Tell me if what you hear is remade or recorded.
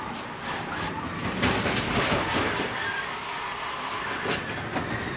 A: recorded